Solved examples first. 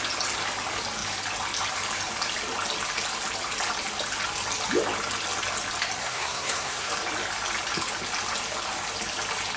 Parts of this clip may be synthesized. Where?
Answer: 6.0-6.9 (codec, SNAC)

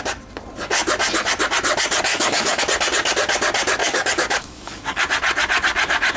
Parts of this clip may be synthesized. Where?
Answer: 2.1-2.6 (codec, DAC); 3.8-5.0

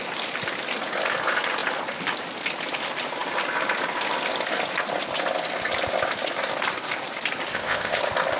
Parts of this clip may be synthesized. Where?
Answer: 7.5-8.0 (codec, ZipCodec)

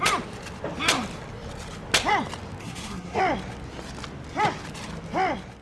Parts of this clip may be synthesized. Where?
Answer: 2.6-3.2 (codec, SNAC)

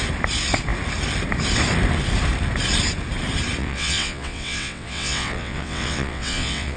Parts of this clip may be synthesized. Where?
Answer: 3.6-6.8 (vocoder, WaveNeXt)